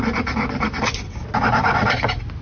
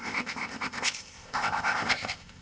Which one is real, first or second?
first